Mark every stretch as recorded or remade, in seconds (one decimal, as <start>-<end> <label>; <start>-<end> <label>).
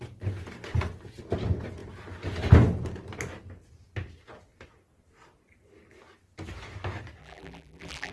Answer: 0.0-7.2 recorded; 7.2-8.1 remade